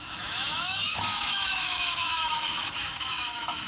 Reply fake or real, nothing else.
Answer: fake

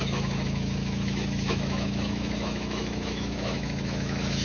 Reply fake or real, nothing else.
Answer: fake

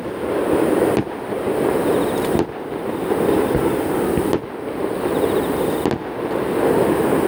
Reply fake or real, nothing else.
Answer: real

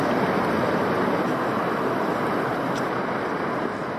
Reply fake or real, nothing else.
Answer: real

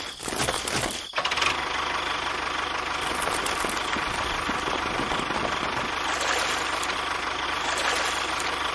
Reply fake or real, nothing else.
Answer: real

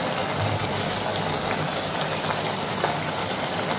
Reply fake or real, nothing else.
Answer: real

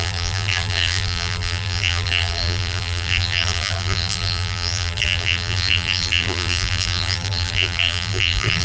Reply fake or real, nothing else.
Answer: fake